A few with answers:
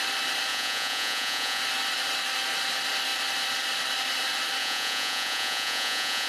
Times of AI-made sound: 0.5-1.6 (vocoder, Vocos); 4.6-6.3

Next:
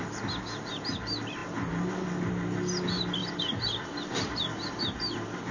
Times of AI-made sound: 3.2-5.5 (vocoder, BigVGAN v2)

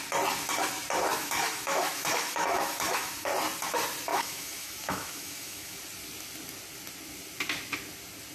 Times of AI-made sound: 1.1-3.3 (autoencoder, DAC-VAE); 4.1-5.8

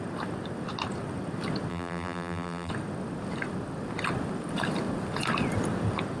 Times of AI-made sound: 1.7-2.7 (vocoder, BigVGAN v2)

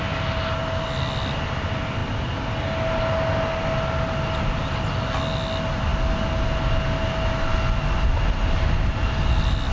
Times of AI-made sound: none

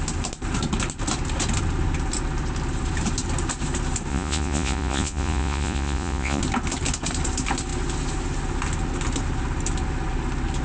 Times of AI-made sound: 4.1-6.4 (vocoder, Vocos)